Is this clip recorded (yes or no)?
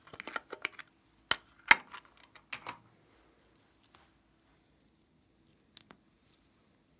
yes